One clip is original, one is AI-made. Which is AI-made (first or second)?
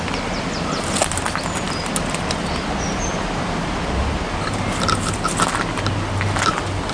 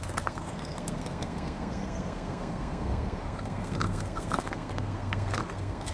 second